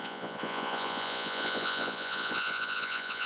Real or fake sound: fake